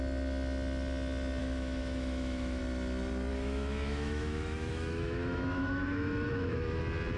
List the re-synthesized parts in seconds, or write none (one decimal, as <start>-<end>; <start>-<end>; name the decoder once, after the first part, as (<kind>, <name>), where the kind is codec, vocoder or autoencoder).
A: 1.4-2.6 (autoencoder, DAC-VAE); 3.3-6.8